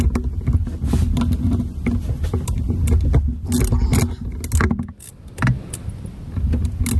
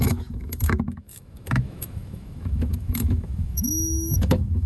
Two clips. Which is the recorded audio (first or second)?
first